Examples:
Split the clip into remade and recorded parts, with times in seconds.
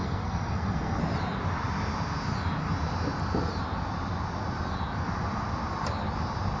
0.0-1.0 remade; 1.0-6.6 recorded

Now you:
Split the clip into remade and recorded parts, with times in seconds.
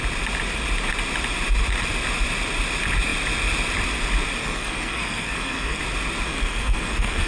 0.0-4.4 recorded; 4.4-5.8 remade; 5.8-6.3 recorded; 6.3-7.3 remade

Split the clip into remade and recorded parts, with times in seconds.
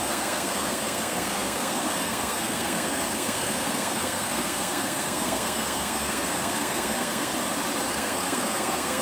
0.0-7.3 remade; 7.3-7.9 recorded; 7.9-9.0 remade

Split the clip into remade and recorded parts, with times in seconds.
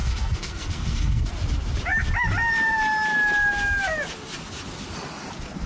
0.0-1.3 remade; 1.3-5.7 recorded